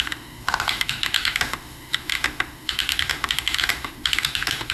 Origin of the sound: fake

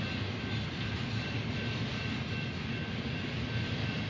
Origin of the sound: real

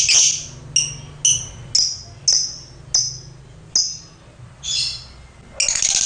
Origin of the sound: real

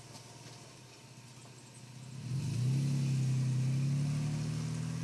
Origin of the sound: real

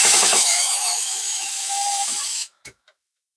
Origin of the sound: fake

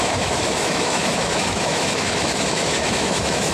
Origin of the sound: fake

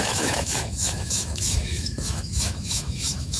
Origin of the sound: fake